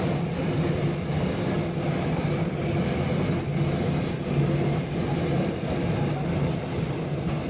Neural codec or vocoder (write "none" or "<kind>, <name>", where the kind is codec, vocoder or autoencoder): none